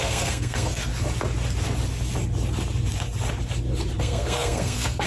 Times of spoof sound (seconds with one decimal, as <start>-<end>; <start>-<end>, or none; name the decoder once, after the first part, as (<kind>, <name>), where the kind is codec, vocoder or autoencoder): 0.0-0.9 (codec, SNAC); 4.0-5.1